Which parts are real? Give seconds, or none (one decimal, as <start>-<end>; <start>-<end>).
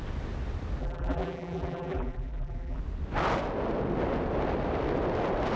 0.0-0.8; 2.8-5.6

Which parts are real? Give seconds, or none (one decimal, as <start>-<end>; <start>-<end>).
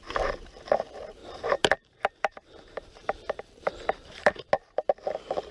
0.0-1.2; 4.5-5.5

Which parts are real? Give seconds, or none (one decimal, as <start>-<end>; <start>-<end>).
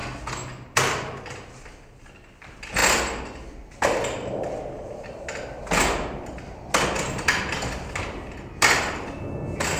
0.0-7.5; 8.0-9.8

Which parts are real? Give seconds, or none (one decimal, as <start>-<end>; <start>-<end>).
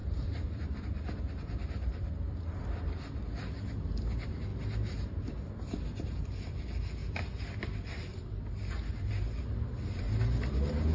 2.1-10.9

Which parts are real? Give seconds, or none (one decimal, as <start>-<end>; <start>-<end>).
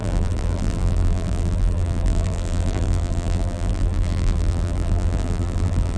none